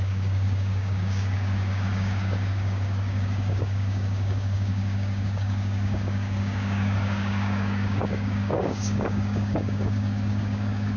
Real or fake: fake